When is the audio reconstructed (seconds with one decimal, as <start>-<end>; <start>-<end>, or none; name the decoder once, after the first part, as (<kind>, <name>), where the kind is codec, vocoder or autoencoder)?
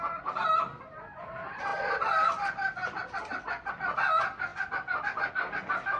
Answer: 1.7-3.7 (vocoder, BigVGAN v2)